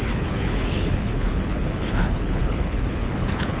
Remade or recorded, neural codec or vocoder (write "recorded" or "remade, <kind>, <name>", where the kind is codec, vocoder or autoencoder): remade, codec, HILCodec